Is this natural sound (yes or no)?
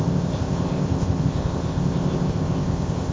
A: no